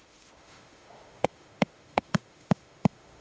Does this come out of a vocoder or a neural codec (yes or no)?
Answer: yes